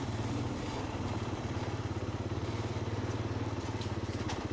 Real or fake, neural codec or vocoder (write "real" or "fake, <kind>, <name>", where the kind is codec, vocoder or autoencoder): fake, vocoder, BigVGAN v2